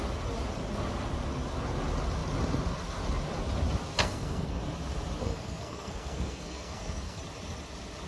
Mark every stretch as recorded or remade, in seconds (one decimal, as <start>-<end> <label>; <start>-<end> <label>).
0.0-4.0 recorded; 4.0-4.6 remade; 4.6-5.2 recorded; 5.2-7.2 remade; 7.2-8.1 recorded